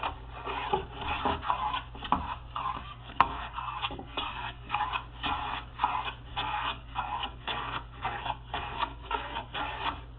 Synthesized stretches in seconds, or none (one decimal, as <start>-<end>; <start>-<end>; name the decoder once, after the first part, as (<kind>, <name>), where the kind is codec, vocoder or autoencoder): 2.8-4.8 (codec, SNAC); 6.3-9.6